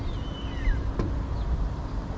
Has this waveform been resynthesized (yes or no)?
no